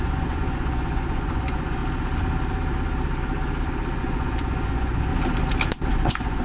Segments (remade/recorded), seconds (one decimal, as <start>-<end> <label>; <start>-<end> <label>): 0.0-1.8 remade; 1.8-4.0 recorded; 4.0-5.1 remade; 5.1-5.9 recorded; 5.9-6.4 remade